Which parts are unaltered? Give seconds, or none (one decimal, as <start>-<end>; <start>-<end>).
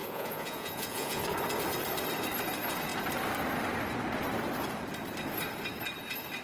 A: 1.2-6.4